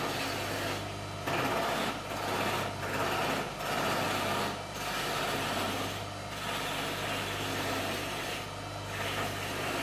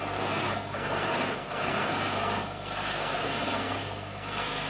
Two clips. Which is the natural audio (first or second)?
first